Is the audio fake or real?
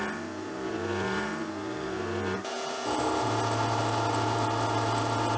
real